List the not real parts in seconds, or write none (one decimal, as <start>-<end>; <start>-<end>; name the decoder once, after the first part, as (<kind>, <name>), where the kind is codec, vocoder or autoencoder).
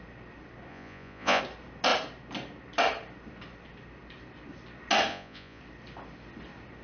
0.7-1.4 (vocoder, Vocos); 5.1-5.6